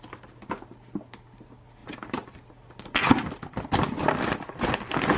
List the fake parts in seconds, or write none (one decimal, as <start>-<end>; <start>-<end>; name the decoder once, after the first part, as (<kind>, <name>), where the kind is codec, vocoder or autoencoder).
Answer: none